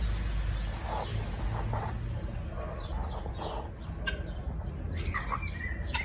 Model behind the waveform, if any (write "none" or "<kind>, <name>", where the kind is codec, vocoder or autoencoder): none